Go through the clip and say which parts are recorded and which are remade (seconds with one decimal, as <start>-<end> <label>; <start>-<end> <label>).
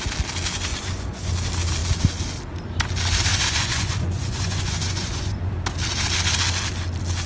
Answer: 0.0-0.7 recorded; 0.7-1.3 remade; 1.3-3.3 recorded; 3.3-5.5 remade; 5.5-7.3 recorded